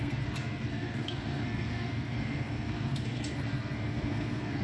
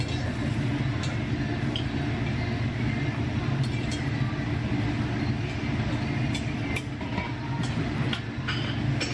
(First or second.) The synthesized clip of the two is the first